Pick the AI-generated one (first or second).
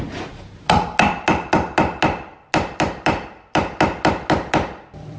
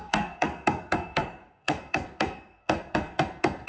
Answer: second